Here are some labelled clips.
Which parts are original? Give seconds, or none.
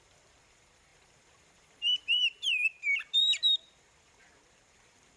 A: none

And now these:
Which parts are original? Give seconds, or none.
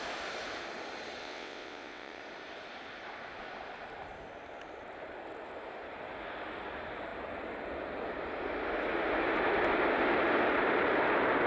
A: 0.0-1.2; 2.2-11.5